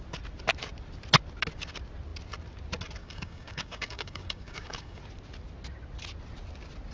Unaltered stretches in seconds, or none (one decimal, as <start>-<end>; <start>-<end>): 0.0-3.0; 5.0-6.9